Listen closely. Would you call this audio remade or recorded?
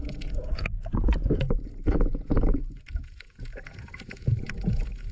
remade